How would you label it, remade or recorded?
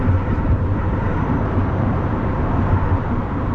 remade